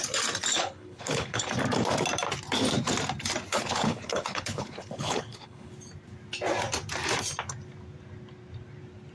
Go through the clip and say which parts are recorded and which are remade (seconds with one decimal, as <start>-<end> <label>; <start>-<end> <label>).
0.0-0.5 recorded; 0.5-1.5 remade; 1.5-3.5 recorded; 3.5-5.7 remade; 5.7-9.1 recorded